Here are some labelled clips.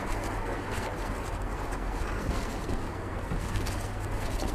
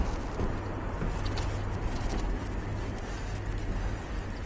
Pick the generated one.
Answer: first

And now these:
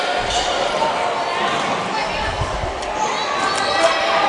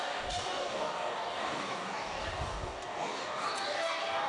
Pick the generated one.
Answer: second